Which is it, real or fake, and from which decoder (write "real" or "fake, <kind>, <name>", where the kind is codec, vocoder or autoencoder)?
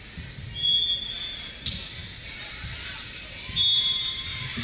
real